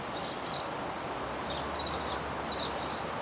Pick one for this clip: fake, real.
real